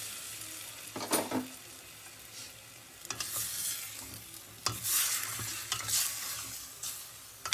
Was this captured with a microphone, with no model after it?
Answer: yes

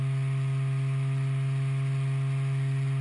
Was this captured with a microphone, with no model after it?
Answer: yes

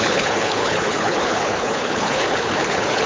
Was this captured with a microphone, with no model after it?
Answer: no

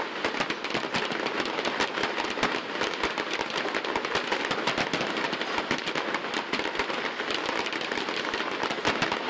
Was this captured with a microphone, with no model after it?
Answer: yes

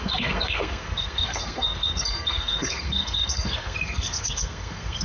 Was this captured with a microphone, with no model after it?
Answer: no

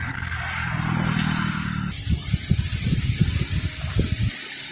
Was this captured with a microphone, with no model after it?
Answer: no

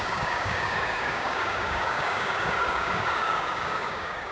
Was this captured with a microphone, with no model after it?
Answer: no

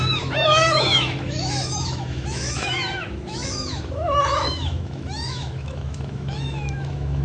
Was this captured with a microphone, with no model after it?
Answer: no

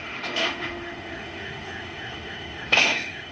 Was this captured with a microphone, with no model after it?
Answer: no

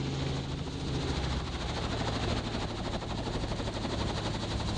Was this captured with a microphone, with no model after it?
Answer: yes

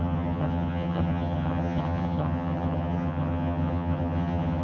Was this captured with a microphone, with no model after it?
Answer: no